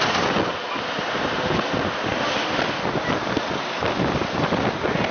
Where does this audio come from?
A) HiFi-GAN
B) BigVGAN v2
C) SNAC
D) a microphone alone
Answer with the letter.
D